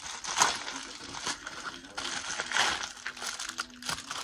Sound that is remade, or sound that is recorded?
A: recorded